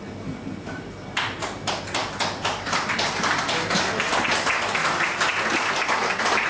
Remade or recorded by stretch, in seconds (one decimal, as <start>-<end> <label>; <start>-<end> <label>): 0.0-6.5 recorded